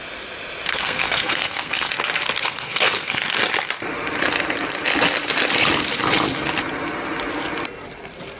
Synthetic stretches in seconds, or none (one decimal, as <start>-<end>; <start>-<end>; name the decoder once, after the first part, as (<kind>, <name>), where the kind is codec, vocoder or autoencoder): 0.7-1.9 (codec, SNAC); 2.4-3.2